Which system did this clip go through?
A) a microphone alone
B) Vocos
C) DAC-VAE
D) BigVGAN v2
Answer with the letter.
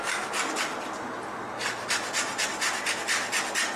A